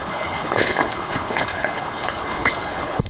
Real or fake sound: fake